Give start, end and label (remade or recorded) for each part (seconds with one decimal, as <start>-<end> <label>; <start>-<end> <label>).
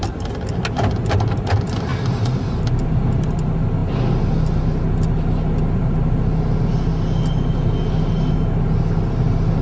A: 0.0-9.6 recorded